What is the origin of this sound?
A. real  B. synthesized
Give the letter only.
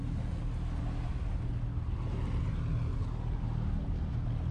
A